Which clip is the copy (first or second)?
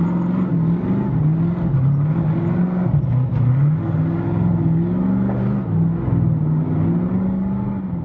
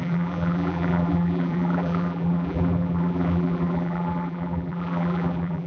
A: second